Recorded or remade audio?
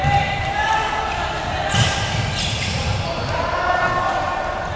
recorded